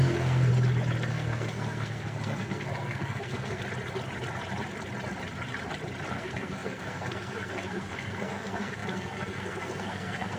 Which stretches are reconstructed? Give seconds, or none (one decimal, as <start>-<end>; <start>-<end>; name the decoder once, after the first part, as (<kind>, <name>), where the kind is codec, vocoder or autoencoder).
0.0-0.5 (codec, SNAC); 1.1-3.6; 6.1-10.4